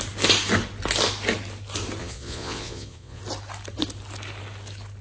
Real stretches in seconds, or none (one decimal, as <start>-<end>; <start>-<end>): 0.0-2.0; 3.2-5.0